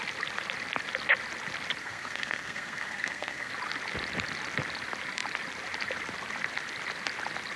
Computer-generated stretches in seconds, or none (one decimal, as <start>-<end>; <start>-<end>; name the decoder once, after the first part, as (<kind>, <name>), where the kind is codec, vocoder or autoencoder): 1.8-3.5 (codec, SNAC)